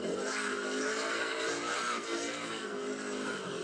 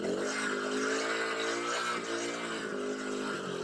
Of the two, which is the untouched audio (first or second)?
second